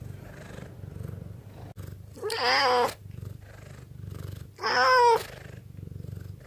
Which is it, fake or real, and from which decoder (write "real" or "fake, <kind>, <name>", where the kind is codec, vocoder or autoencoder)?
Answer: real